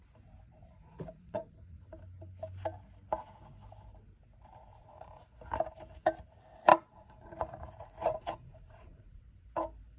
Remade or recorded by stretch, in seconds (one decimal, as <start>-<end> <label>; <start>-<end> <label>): 0.0-0.6 recorded; 0.6-1.9 remade; 1.9-4.7 recorded; 4.7-5.3 remade; 5.3-6.7 recorded; 6.7-9.2 remade; 9.2-10.0 recorded